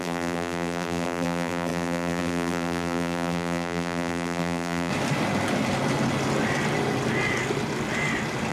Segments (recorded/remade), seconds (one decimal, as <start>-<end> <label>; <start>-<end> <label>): 0.0-4.9 remade; 4.9-8.5 recorded

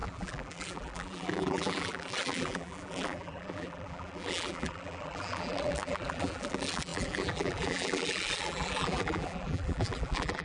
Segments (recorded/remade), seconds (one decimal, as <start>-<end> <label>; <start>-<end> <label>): 0.0-10.4 remade

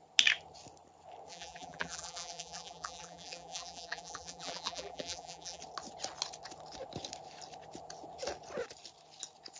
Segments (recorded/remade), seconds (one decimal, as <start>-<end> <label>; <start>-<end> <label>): 0.0-1.3 recorded; 1.3-5.6 remade; 5.6-9.6 recorded